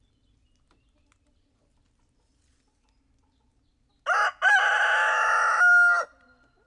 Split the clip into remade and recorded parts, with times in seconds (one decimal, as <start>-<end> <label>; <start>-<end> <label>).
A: 0.0-6.7 recorded